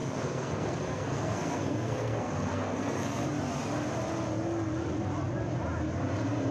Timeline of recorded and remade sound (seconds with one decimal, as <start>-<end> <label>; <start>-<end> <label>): 0.0-3.2 remade; 3.2-6.5 recorded